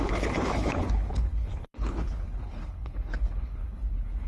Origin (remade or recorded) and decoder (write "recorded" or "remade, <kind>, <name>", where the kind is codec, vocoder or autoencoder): remade, codec, HILCodec